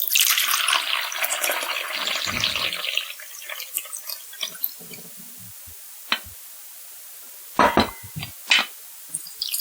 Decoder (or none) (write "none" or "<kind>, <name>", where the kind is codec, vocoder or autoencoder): none